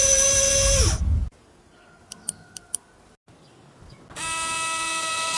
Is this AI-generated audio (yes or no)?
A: no